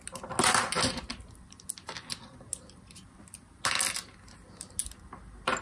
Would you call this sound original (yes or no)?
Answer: yes